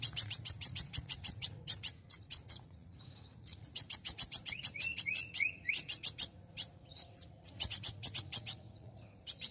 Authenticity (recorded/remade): remade